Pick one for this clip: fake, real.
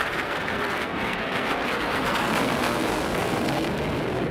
fake